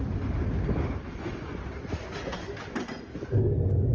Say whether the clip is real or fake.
real